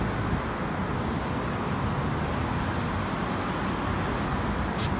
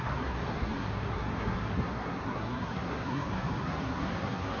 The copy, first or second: second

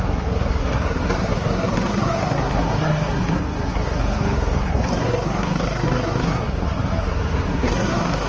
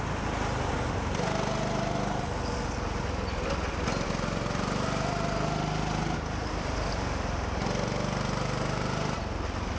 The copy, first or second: first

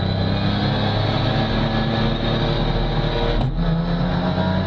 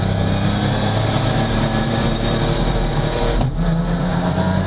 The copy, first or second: second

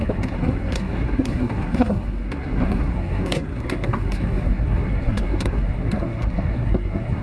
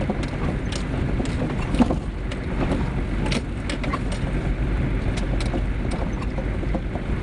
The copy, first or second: first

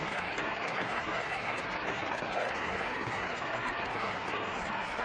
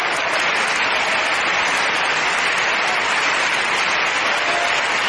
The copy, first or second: first